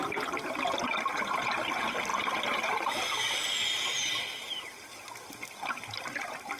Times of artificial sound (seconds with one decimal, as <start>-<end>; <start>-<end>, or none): none